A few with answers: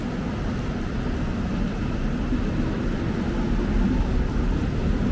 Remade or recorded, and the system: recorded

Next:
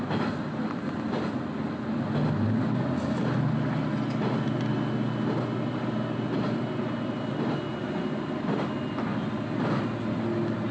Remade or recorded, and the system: recorded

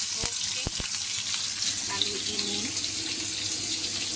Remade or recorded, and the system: recorded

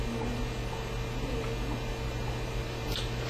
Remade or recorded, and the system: recorded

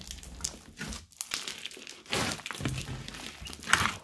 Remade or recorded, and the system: recorded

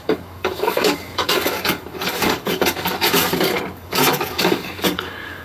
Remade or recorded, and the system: remade, codec, DAC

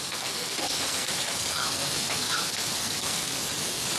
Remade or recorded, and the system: remade, codec, SNAC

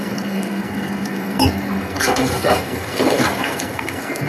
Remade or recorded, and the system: remade, codec, SNAC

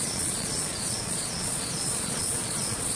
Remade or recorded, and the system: remade, vocoder, Vocos